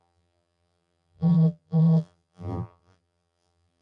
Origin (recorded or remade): remade